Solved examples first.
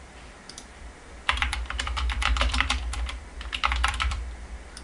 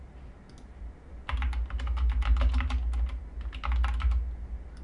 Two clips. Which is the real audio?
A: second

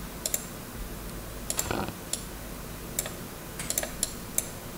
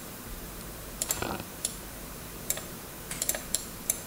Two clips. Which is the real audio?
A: first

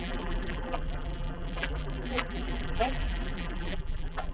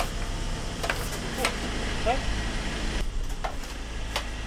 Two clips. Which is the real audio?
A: second